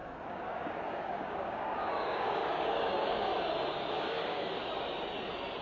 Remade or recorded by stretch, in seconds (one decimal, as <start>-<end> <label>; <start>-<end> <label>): 0.0-3.3 remade; 3.3-3.9 recorded; 3.9-4.6 remade; 4.6-5.6 recorded